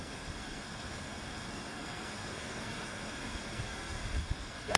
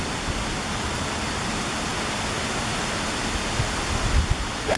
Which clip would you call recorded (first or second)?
second